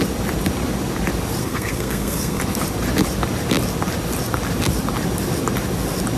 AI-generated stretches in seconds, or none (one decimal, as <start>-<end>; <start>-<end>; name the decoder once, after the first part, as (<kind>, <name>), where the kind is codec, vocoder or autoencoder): 1.4-2.4 (codec, SNAC)